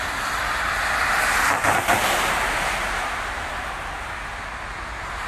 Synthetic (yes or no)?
no